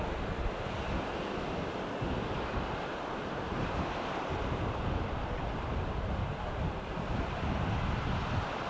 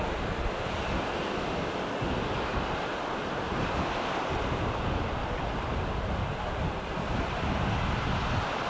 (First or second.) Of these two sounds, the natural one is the second